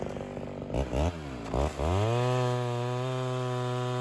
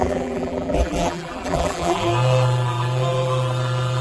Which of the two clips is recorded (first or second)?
first